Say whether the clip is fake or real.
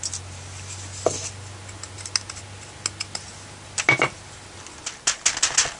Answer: real